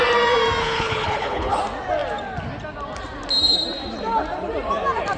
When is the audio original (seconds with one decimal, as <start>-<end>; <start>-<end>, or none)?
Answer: 0.0-0.6; 1.6-5.2